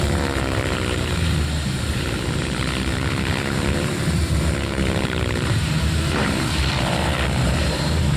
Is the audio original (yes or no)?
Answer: no